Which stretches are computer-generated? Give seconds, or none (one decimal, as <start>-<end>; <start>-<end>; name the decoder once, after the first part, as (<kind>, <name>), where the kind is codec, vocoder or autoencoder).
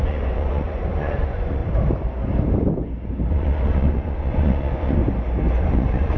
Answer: 0.0-1.6 (vocoder, Vocos); 3.3-5.0; 5.5-6.2